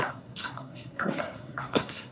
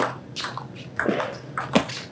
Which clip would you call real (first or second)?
second